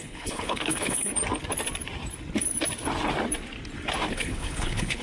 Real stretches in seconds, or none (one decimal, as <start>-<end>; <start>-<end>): 1.1-4.1